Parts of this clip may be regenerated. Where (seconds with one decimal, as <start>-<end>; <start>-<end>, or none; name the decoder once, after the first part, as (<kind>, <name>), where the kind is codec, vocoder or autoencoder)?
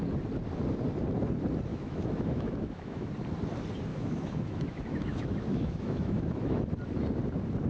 1.7-3.1 (autoencoder, DAC-VAE); 3.9-6.6